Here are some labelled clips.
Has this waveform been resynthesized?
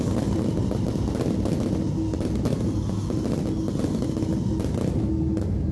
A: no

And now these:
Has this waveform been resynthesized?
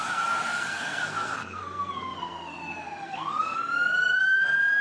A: yes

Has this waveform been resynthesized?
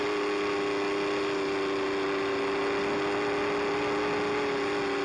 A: no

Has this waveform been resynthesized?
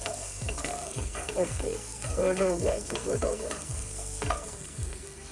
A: yes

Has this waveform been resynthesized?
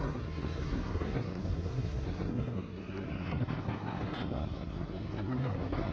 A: yes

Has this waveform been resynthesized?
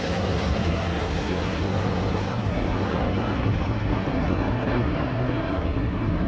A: yes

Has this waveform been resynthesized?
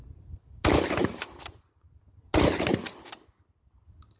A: no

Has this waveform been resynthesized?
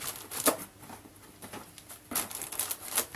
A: no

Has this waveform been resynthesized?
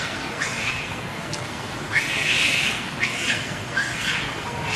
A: yes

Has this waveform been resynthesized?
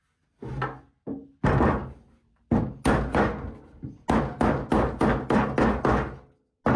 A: no